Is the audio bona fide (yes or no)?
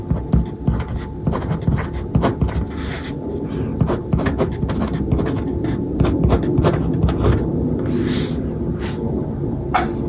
yes